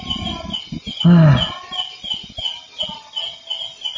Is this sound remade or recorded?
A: recorded